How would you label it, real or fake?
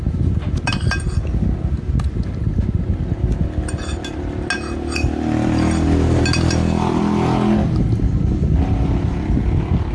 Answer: real